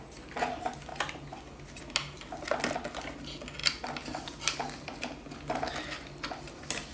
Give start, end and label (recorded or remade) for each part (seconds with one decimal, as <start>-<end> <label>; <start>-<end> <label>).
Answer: 0.0-6.9 recorded